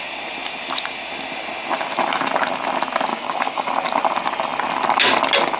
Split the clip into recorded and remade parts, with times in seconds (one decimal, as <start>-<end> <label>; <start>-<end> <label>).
0.0-3.1 recorded; 3.1-3.7 remade; 3.7-5.6 recorded